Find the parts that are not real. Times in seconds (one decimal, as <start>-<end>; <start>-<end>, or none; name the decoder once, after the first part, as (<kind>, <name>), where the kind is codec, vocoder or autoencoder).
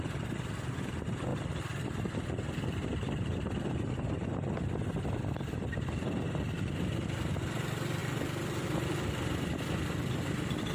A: 8.0-9.1 (vocoder, BigVGAN v2)